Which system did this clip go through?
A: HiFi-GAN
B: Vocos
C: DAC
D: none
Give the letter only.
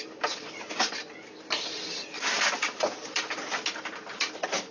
D